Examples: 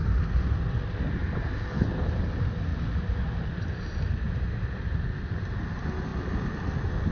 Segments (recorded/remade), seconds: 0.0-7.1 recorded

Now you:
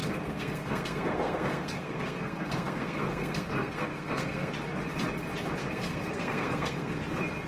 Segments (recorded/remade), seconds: 0.0-4.5 remade; 4.5-5.6 recorded; 5.6-7.0 remade; 7.0-7.5 recorded